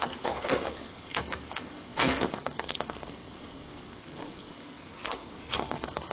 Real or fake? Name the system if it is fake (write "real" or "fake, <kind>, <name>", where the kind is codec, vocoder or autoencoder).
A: fake, codec, SNAC